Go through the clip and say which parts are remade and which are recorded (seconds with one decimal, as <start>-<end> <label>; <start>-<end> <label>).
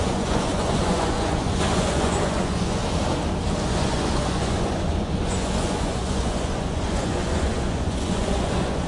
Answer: 0.0-2.8 remade; 2.8-3.6 recorded; 3.6-8.9 remade